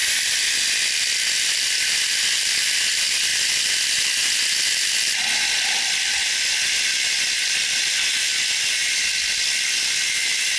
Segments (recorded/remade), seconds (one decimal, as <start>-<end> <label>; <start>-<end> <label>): 0.0-10.6 recorded